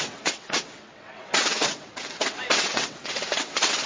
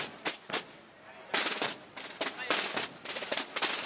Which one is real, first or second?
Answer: second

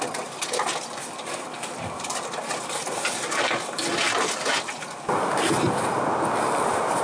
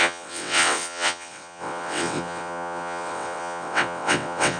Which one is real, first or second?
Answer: first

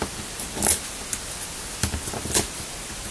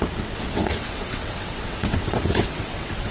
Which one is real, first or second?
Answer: first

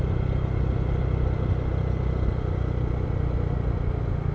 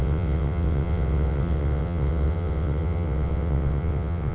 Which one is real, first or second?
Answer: first